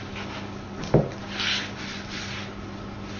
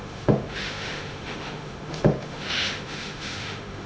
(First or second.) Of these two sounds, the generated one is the second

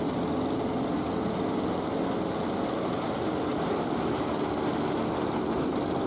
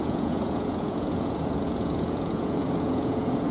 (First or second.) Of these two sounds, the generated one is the second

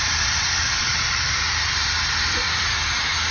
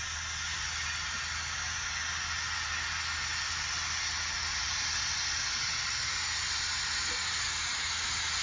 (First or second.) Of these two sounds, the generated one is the first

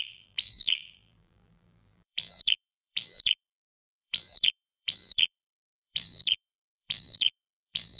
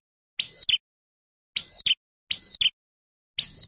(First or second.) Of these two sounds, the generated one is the first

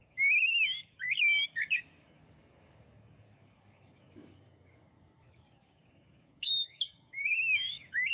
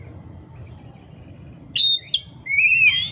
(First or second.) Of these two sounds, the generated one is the first